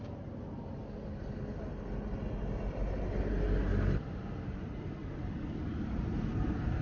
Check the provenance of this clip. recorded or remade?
recorded